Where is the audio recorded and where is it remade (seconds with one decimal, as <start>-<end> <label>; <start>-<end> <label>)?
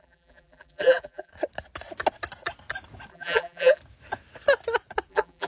0.0-1.3 remade; 1.3-3.1 recorded; 3.1-3.8 remade; 3.8-5.1 recorded; 5.1-5.5 remade